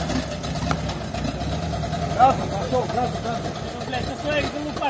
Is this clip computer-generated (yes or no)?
no